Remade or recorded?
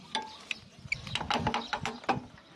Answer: recorded